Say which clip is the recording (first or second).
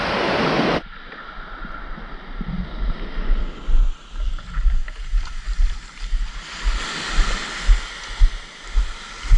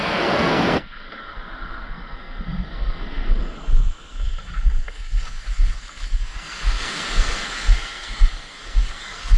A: first